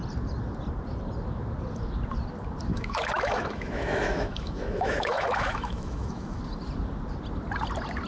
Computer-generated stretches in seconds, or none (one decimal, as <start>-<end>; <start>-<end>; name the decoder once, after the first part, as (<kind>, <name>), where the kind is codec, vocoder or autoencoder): 2.7-6.4 (autoencoder, DAC-VAE)